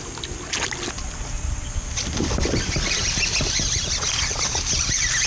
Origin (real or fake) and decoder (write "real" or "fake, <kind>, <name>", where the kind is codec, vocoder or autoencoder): real